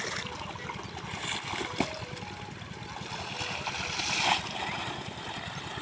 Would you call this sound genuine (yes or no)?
yes